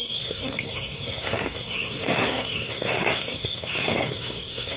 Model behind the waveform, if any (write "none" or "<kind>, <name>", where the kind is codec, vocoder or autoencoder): codec, SNAC